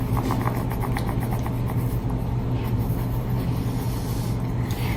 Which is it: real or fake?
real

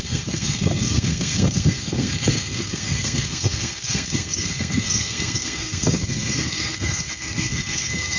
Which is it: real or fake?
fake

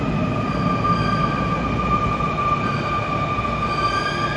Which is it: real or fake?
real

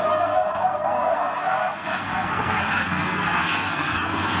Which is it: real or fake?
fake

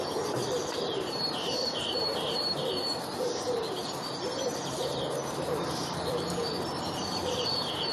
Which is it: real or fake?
fake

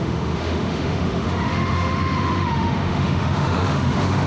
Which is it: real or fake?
fake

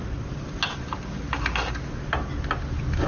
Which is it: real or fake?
real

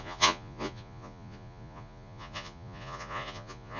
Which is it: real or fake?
fake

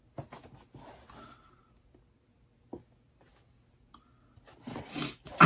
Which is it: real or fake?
real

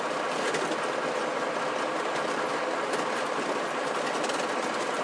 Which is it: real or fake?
real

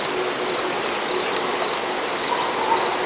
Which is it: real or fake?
real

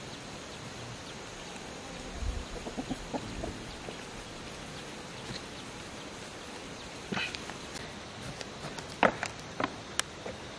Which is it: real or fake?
real